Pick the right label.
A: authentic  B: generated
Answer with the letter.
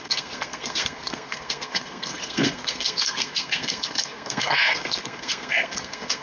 B